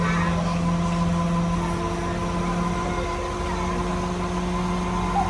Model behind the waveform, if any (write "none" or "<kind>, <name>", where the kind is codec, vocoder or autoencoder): none